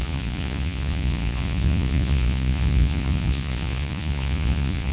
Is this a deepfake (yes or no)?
yes